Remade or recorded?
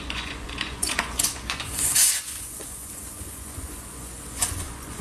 remade